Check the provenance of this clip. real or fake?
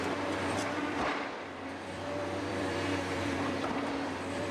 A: fake